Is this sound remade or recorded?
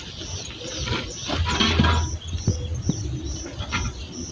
remade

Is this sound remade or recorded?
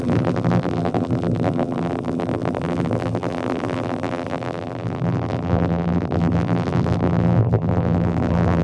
remade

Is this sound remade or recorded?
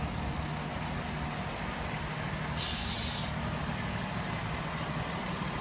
recorded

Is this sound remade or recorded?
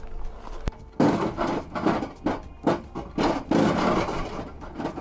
recorded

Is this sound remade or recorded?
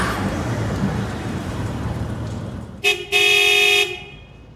remade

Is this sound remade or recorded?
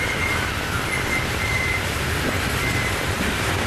remade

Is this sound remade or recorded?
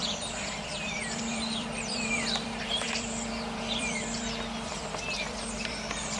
remade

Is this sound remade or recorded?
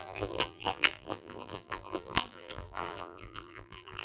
remade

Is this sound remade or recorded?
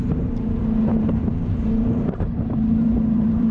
remade